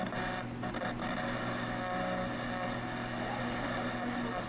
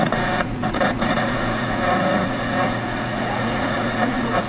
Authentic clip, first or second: first